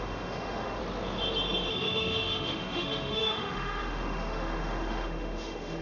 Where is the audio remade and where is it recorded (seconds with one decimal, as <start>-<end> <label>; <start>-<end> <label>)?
0.0-0.8 remade; 0.8-1.7 recorded; 1.7-5.8 remade

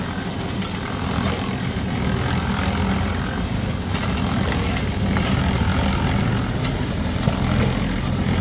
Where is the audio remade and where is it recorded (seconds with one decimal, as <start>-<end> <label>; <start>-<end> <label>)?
0.0-8.4 recorded